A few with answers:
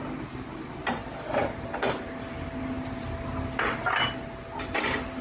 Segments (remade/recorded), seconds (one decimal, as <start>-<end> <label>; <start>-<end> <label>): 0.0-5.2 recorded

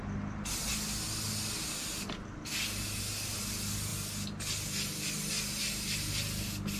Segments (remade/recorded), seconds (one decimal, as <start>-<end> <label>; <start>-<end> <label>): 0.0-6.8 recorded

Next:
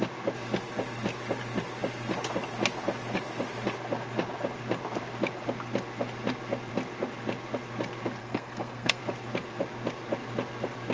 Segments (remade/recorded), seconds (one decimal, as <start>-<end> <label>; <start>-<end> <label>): 0.0-8.2 recorded; 8.2-9.0 remade; 9.0-10.9 recorded